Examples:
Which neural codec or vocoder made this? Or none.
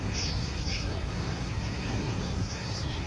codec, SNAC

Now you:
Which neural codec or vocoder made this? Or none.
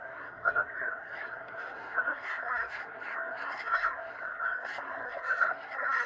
codec, SNAC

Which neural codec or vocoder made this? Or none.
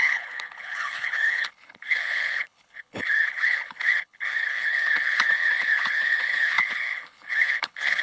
codec, HILCodec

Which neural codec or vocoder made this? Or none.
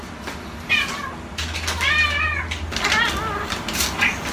none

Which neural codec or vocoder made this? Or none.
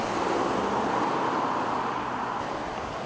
none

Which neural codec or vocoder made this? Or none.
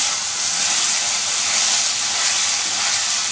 none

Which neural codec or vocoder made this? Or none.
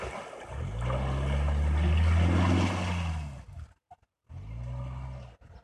none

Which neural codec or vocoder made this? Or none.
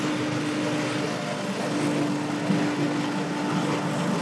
none